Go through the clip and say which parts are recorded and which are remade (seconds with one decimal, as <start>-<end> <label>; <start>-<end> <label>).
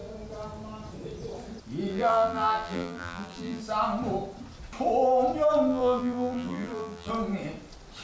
0.0-1.9 recorded; 1.9-3.6 remade; 3.6-5.7 recorded; 5.7-7.1 remade; 7.1-8.0 recorded